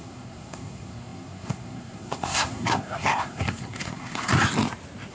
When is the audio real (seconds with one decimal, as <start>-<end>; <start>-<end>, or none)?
4.3-5.1